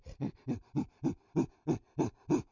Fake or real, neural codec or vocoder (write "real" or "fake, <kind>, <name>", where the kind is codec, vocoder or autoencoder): real